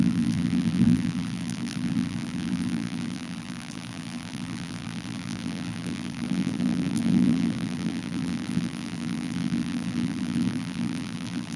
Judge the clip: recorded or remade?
remade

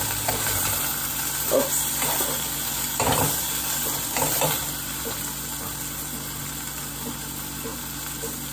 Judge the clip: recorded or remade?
recorded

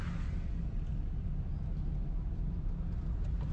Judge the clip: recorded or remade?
recorded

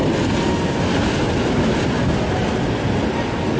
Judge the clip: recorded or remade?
recorded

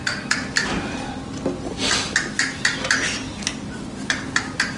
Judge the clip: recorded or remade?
recorded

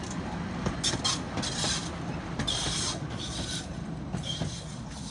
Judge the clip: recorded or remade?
recorded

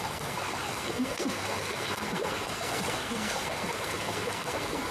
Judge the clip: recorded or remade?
remade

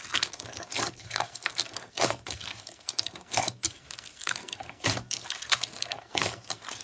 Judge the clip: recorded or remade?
remade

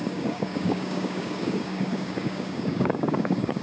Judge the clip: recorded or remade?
remade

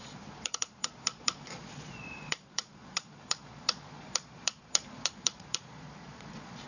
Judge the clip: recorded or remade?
remade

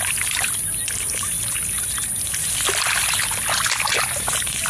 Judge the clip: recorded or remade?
recorded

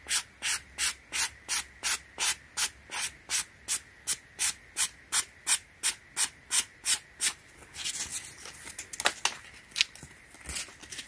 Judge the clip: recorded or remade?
recorded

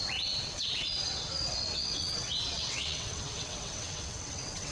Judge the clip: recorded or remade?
remade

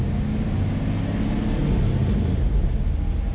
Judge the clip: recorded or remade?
recorded